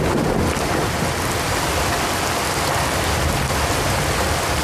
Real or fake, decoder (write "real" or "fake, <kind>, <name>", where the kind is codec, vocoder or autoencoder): real